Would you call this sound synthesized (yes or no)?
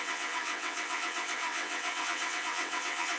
yes